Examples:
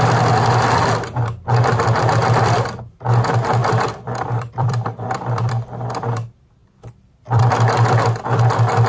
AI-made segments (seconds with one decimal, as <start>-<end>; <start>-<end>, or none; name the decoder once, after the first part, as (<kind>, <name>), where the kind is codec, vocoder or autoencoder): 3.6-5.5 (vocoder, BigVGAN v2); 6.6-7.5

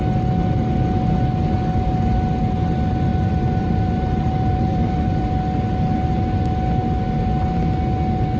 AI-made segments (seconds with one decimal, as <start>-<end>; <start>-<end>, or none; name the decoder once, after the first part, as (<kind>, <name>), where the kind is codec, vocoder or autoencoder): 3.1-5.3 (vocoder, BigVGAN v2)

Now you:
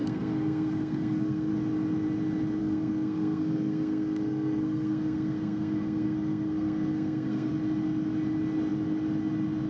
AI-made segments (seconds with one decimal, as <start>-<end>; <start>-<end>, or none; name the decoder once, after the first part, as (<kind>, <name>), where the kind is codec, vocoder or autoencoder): 0.0-1.5 (codec, SNAC); 2.6-7.5

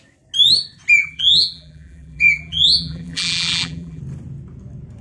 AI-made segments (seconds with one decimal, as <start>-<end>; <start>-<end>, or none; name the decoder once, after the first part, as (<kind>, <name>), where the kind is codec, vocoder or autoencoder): 1.0-4.0 (vocoder, BigVGAN v2)

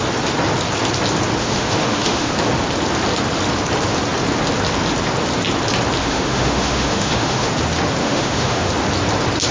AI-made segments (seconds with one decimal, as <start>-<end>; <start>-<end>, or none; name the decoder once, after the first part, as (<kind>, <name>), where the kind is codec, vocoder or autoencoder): 1.4-2.3 (autoencoder, DAC-VAE); 6.0-7.5; 8.0-8.7

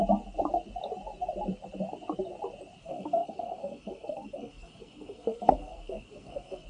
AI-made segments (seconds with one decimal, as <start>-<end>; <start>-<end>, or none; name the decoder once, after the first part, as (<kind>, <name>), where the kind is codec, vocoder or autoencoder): 2.8-6.7 (codec, SNAC)